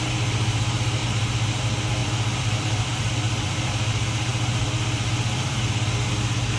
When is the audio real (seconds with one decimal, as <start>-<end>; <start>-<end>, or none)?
0.0-2.0; 3.7-4.3; 5.7-6.6